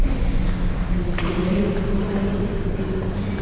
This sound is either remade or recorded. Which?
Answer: recorded